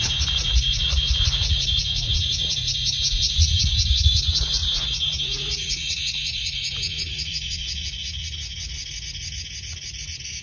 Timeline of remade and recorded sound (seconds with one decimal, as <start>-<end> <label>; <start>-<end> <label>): 0.0-10.4 remade